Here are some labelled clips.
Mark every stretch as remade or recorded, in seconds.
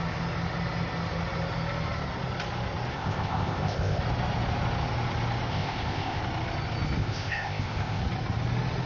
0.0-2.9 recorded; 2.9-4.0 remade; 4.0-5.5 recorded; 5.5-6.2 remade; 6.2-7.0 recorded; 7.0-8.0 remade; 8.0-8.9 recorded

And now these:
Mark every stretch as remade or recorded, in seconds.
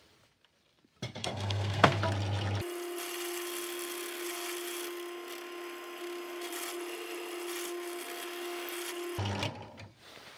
0.0-1.2 recorded; 1.2-2.0 remade; 2.0-10.4 recorded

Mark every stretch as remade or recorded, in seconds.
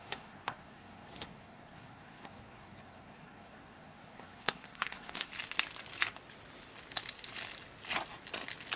0.0-5.3 remade; 5.3-8.8 recorded